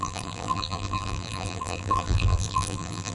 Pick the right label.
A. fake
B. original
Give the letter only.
A